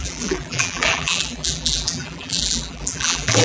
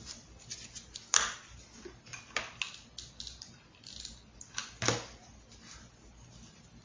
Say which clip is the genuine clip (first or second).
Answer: second